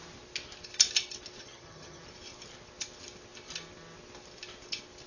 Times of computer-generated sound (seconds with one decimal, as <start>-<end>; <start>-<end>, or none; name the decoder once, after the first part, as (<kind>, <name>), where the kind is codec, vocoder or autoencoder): 1.4-2.0 (vocoder, HiFi-GAN)